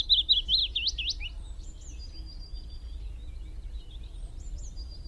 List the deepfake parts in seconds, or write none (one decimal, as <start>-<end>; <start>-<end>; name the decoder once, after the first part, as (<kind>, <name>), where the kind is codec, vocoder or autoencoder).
none